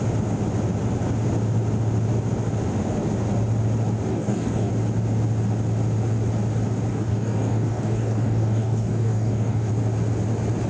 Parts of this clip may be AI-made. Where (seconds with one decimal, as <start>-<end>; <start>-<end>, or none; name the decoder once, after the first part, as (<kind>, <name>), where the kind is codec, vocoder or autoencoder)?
4.1-4.7 (codec, DAC); 6.9-9.7